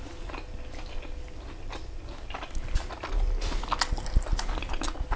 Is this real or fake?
real